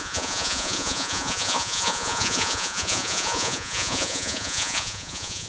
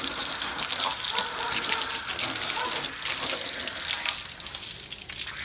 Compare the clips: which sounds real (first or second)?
second